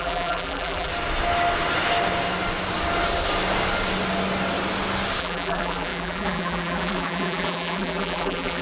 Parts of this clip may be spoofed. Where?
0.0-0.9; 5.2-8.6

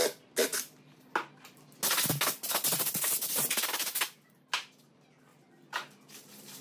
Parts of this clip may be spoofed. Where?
5.3-6.6

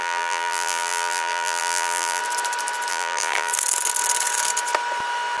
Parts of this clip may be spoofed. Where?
0.0-2.2; 2.9-3.5

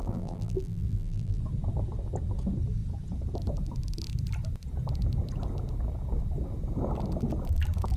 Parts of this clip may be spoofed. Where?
0.0-1.4

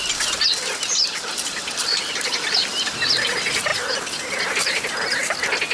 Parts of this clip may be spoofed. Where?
none

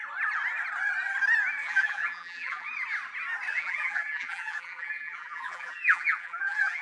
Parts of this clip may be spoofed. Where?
1.6-2.7; 3.5-6.8

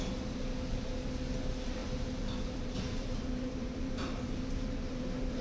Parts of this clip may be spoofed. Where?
1.8-5.0

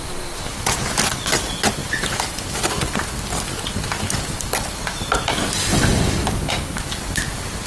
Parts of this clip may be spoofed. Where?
1.8-3.0